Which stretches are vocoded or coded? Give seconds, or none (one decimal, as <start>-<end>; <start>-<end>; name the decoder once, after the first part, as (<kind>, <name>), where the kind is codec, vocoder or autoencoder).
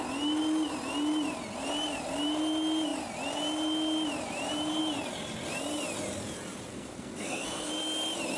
6.7-7.7 (codec, SNAC)